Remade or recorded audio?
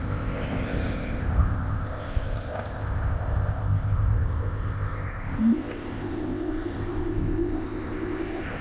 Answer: remade